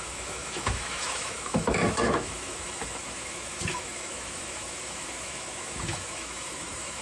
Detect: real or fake fake